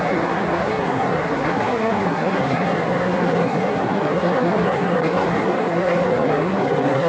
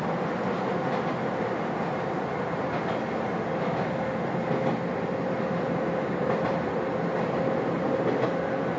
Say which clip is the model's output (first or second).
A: first